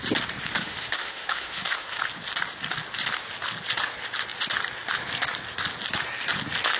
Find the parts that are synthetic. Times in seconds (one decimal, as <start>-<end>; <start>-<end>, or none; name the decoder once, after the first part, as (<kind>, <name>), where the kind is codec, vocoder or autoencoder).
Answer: 0.5-2.0 (autoencoder, DAC-VAE)